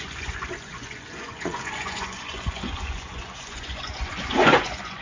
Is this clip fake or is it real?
fake